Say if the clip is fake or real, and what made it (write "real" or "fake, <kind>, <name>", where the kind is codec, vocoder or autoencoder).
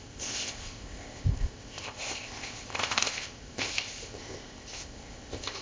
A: fake, codec, ZipCodec